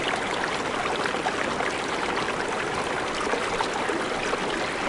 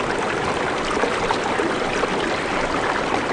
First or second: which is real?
first